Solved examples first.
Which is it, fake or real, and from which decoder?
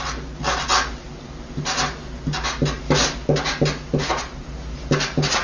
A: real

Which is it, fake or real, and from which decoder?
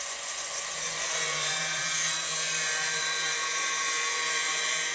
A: fake, vocoder, Vocos